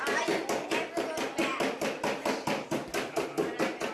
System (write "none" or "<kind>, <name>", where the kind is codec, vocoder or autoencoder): none